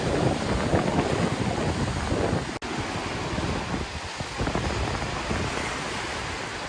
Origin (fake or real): real